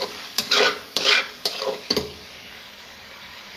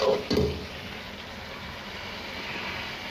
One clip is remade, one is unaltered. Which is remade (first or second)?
first